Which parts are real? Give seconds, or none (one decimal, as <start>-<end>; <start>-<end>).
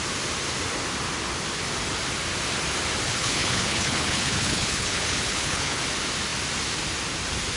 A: 0.0-3.1; 5.8-7.6